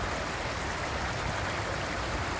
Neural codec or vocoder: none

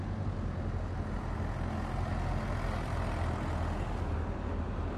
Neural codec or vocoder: none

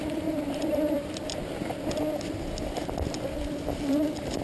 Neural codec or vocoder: vocoder, BigVGAN v2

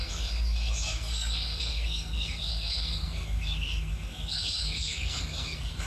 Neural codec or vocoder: codec, SNAC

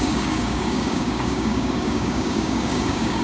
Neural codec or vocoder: codec, DAC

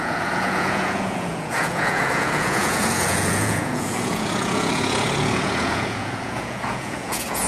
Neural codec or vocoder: vocoder, Vocos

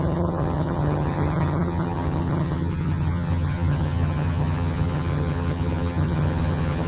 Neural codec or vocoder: vocoder, HiFi-GAN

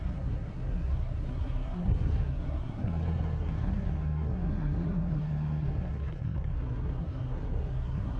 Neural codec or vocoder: codec, SNAC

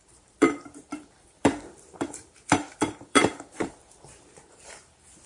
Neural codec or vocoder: vocoder, BigVGAN v2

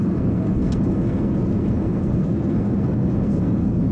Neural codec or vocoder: codec, SNAC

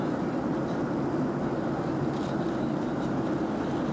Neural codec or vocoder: none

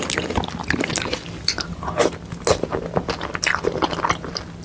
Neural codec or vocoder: none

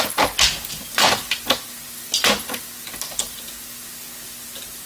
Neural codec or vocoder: none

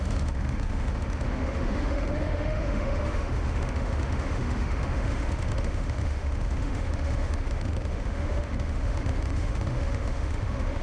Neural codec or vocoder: autoencoder, DAC-VAE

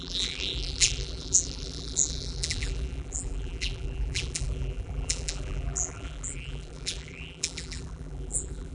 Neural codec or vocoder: vocoder, BigVGAN v2